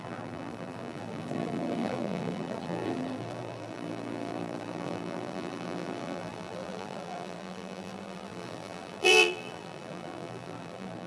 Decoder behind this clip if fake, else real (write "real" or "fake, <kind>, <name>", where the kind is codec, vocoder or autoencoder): fake, vocoder, BigVGAN v2